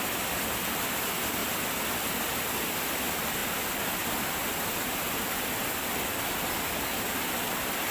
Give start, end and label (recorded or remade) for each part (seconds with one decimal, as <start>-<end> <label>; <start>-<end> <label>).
0.0-7.9 recorded